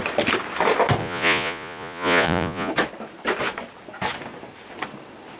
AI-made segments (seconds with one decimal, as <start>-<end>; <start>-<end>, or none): 1.0-2.7